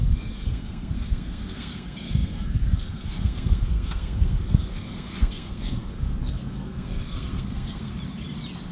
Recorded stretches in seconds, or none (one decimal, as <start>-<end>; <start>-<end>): 7.9-8.7